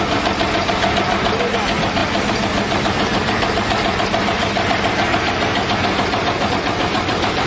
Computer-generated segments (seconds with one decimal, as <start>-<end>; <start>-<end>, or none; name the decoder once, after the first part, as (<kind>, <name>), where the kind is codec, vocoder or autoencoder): none